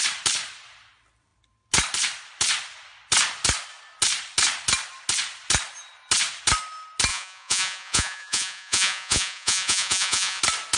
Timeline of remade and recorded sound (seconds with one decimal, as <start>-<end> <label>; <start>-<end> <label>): 0.0-7.1 recorded; 7.1-10.4 remade; 10.4-10.8 recorded